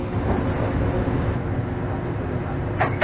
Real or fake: real